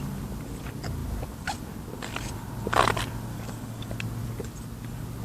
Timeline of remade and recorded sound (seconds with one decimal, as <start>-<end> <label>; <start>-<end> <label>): 0.0-3.3 recorded; 3.3-3.9 remade; 3.9-5.2 recorded